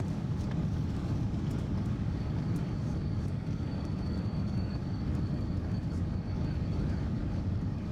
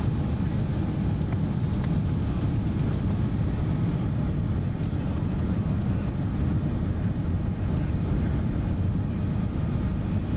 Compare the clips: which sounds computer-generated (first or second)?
first